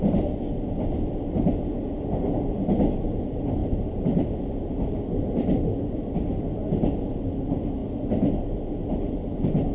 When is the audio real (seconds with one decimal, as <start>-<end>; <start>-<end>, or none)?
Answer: 0.0-3.6; 4.5-9.7